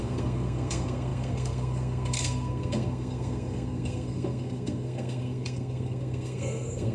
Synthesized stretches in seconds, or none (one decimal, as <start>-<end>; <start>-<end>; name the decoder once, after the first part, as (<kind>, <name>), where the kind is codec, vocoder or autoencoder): 0.0-6.9 (codec, SNAC)